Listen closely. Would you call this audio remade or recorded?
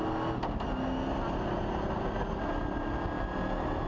recorded